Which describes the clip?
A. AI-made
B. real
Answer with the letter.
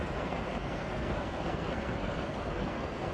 A